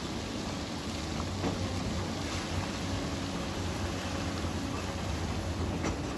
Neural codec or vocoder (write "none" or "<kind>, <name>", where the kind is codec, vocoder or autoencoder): none